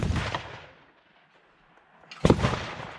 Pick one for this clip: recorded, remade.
recorded